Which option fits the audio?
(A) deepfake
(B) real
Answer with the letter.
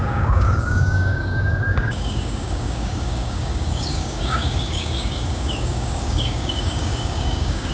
A